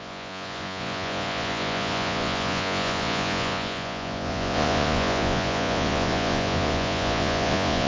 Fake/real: fake